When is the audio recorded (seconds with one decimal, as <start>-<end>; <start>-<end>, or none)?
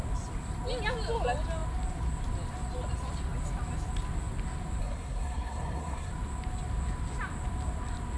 0.0-4.8; 6.1-8.2